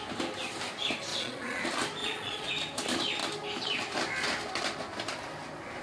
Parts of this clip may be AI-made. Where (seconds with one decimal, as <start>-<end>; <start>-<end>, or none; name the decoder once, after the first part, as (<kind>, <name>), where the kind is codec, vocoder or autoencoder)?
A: 1.1-1.6 (vocoder, Vocos); 2.0-2.5